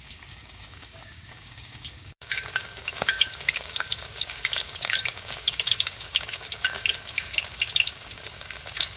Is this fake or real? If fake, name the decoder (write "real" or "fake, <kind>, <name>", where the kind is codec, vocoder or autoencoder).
fake, codec, DAC